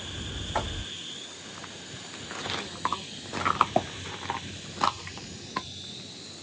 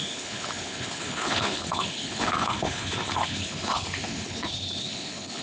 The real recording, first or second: first